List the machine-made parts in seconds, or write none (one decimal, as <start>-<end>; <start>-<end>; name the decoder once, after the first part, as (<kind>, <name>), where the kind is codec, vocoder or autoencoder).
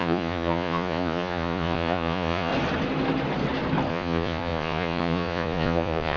0.0-2.5 (vocoder, Vocos); 3.9-6.2